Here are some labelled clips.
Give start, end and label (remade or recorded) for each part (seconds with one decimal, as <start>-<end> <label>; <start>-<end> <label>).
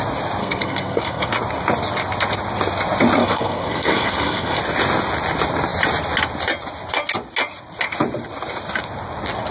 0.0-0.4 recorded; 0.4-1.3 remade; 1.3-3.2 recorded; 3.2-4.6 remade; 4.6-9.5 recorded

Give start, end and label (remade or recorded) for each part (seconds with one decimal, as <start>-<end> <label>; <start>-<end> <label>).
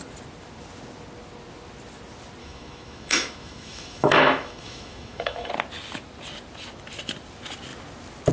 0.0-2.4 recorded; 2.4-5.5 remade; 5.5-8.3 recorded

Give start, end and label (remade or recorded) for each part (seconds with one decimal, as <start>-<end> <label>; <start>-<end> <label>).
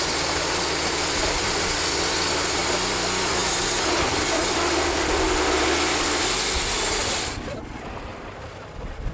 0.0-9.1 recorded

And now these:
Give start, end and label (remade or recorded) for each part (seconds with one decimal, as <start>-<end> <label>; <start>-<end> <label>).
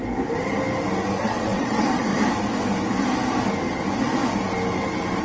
0.0-1.2 recorded; 1.2-2.1 remade; 2.1-5.2 recorded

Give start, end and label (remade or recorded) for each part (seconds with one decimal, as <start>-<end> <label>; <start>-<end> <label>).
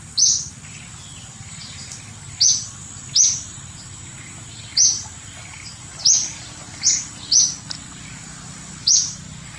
0.0-9.6 recorded